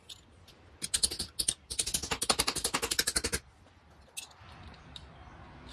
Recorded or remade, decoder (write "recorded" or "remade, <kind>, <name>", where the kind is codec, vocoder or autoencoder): recorded